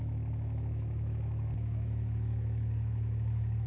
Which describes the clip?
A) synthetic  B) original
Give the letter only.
A